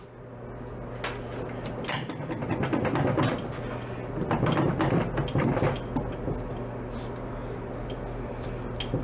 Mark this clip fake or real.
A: real